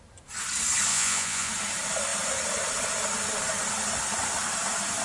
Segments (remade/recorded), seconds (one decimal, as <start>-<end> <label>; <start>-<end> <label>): 0.0-0.9 recorded; 0.9-1.5 remade; 1.5-5.0 recorded